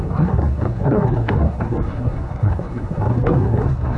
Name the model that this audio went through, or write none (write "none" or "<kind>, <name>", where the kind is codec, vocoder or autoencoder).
codec, SNAC